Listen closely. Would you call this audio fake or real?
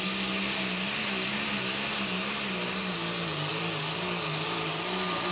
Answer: real